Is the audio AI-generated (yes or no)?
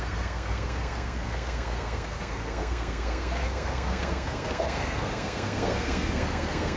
yes